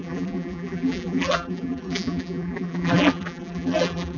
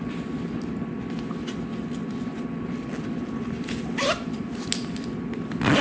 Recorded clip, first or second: second